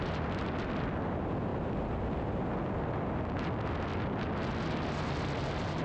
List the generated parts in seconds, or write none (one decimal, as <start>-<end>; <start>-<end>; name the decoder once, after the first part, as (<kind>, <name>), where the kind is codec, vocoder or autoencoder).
none